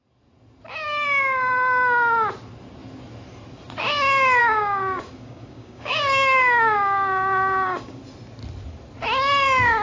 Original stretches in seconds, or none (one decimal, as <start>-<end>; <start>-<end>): 0.0-4.4; 8.0-9.8